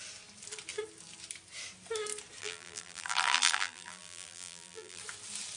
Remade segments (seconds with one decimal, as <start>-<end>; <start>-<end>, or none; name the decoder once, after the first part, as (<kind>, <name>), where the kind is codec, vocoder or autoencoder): 2.4-5.0 (vocoder, BigVGAN v2)